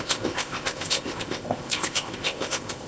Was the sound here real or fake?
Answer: fake